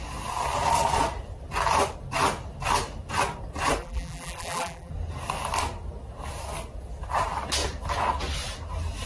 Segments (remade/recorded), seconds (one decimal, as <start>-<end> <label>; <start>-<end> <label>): 0.0-3.8 recorded; 3.8-4.9 remade; 4.9-9.1 recorded